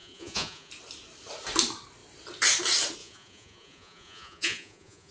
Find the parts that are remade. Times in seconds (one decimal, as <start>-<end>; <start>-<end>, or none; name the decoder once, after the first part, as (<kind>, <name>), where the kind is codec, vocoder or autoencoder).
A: 0.0-0.7 (vocoder, Vocos); 3.0-5.1